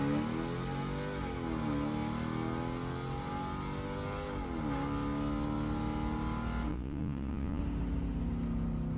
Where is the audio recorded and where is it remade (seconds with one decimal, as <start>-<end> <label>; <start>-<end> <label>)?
0.0-6.7 recorded; 6.7-7.6 remade; 7.6-9.0 recorded